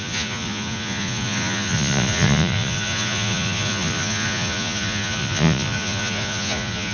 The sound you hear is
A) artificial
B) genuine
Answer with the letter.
A